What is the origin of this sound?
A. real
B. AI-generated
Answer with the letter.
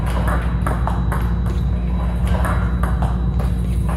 A